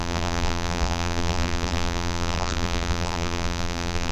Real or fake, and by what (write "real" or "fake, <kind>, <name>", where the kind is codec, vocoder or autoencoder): fake, vocoder, BigVGAN v2